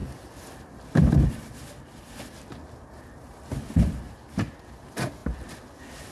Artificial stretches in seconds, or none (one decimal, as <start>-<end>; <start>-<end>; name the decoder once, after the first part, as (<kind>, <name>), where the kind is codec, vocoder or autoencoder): none